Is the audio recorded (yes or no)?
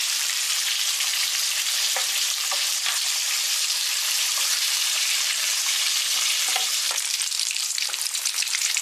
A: no